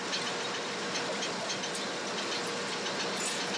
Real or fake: real